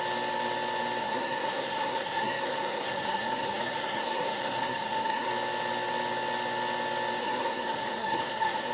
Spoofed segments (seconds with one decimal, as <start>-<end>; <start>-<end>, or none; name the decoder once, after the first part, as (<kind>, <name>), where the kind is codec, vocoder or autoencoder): 1.0-5.3 (codec, SNAC); 7.2-8.7